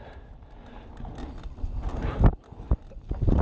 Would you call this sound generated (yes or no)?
no